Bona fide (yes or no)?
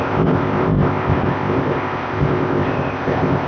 no